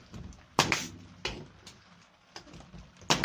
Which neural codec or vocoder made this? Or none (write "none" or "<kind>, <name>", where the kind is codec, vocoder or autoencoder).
none